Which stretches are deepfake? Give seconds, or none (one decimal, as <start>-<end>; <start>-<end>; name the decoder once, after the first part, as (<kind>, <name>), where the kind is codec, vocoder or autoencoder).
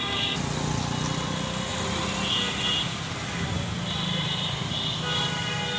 none